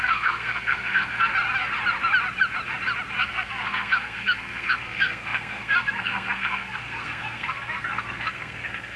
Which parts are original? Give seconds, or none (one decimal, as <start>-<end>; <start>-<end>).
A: 1.3-3.2